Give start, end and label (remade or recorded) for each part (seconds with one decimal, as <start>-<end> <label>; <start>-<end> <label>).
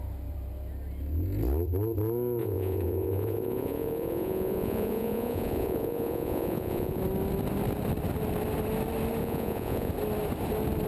0.0-2.4 recorded; 2.4-7.0 remade; 7.0-9.2 recorded; 9.2-9.9 remade; 9.9-10.9 recorded